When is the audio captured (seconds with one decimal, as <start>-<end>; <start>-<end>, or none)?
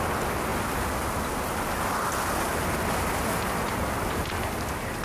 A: 0.0-5.0